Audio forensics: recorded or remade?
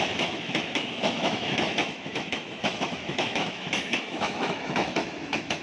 remade